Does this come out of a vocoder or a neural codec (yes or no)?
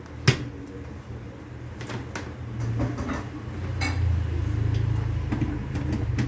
no